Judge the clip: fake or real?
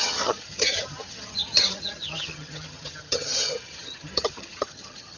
fake